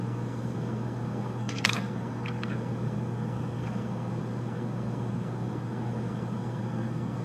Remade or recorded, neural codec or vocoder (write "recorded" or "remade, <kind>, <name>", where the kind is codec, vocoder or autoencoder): remade, codec, SNAC